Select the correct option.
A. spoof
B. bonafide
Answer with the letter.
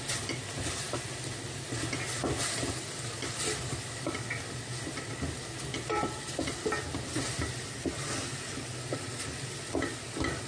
B